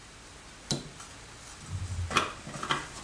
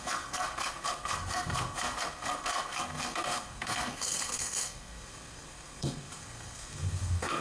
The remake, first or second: second